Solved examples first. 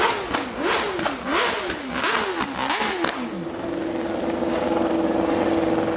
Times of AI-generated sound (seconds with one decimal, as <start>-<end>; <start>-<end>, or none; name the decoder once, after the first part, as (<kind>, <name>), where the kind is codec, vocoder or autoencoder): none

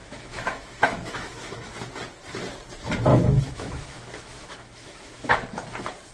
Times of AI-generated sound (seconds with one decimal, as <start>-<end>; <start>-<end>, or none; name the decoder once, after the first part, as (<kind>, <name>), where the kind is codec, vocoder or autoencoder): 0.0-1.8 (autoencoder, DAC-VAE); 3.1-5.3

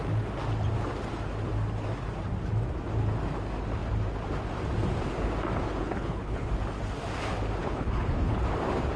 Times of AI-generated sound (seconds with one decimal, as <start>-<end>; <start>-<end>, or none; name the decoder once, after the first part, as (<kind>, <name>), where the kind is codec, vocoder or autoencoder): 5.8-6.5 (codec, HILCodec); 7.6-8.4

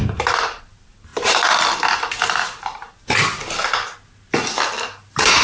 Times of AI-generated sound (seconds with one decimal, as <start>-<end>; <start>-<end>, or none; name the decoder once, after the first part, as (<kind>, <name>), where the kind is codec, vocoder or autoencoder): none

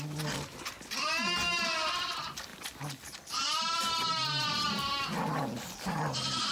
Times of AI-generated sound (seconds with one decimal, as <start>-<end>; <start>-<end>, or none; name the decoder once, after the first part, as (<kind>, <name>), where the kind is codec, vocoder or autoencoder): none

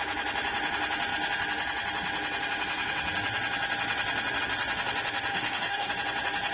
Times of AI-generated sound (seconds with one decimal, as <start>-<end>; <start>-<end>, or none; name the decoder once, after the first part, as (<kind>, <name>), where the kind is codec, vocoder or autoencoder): 5.3-5.9 (codec, DAC)

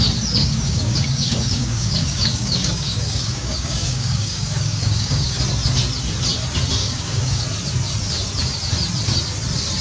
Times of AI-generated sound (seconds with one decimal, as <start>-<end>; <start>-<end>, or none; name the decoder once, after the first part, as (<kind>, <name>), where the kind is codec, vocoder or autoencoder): 0.4-5.4 (codec, DAC); 6.8-7.4

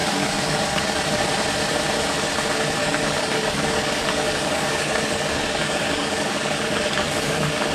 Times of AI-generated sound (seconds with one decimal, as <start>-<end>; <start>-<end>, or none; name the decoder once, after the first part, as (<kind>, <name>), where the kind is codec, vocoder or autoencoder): 0.0-0.8 (codec, DAC); 2.8-7.7